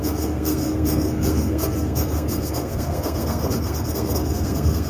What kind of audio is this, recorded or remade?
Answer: remade